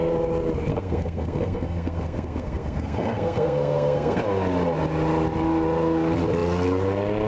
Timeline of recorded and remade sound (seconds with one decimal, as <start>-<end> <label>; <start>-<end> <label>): 0.0-0.7 recorded; 0.7-4.2 remade; 4.2-7.3 recorded